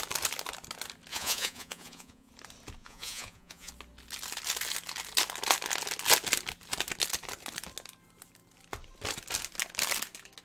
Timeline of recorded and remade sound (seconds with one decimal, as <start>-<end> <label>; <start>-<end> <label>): 0.0-1.1 recorded; 1.1-2.3 remade; 2.3-2.8 recorded; 2.8-3.7 remade; 3.7-10.4 recorded